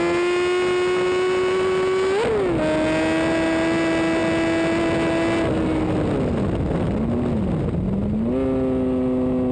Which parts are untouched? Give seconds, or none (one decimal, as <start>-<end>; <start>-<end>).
0.0-9.5